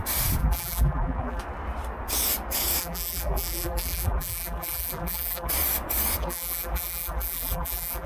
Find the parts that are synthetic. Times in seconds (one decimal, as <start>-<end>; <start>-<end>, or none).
0.4-1.4; 2.8-5.5; 6.2-8.1